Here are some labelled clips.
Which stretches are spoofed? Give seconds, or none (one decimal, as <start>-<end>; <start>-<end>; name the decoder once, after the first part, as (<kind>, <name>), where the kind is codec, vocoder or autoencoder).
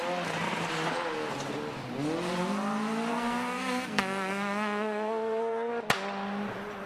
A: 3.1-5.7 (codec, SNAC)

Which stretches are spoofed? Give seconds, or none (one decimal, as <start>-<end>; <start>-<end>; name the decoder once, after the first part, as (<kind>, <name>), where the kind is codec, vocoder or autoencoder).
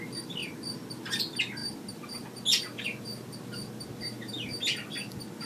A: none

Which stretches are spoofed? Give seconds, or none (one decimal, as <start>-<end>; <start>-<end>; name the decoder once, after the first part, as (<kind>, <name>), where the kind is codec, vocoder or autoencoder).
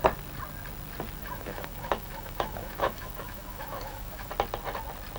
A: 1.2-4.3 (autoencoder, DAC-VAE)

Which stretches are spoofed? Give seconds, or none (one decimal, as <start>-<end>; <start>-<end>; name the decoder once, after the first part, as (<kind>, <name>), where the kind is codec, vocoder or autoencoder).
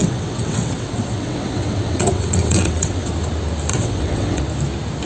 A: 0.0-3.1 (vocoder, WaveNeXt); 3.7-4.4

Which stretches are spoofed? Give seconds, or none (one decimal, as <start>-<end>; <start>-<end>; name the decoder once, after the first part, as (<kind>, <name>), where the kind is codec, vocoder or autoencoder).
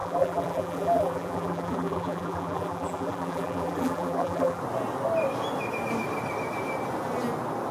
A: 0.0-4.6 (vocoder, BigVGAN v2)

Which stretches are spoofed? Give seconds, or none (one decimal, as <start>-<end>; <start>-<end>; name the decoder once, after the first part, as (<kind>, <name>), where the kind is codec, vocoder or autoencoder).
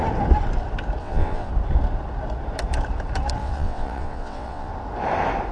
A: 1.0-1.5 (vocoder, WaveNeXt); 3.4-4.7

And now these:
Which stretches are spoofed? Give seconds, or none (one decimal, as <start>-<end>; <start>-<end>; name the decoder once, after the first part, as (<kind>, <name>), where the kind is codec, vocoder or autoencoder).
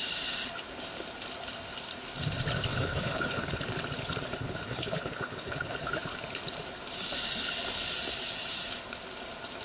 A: 2.7-3.6 (codec, HILCodec); 4.3-5.9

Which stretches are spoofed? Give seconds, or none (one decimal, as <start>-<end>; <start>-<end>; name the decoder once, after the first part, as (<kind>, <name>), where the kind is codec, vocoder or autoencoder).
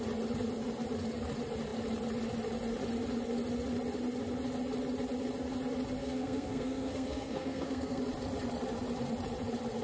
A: 6.0-8.0 (codec, SNAC)